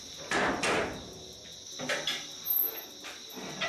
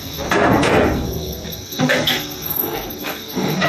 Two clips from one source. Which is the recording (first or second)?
first